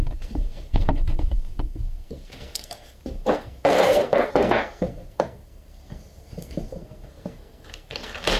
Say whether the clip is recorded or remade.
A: remade